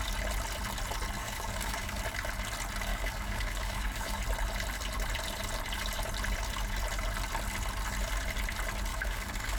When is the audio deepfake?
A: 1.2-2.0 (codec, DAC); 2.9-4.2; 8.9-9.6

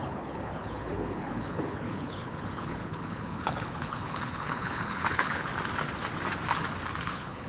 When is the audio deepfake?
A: 0.0-5.5 (codec, HILCodec); 7.0-7.5

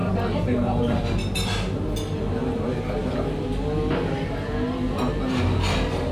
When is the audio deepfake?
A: 0.0-1.0 (vocoder, BigVGAN v2)